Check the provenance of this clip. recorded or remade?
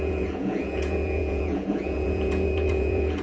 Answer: remade